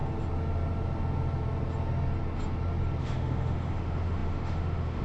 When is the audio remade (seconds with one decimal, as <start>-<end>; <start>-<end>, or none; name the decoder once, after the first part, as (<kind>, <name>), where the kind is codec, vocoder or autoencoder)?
3.0-5.0 (autoencoder, DAC-VAE)